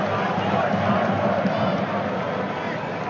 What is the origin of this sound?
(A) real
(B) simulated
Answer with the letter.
A